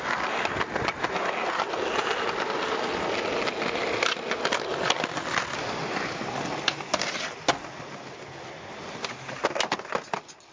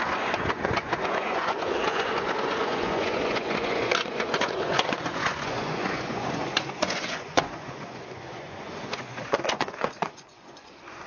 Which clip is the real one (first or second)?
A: first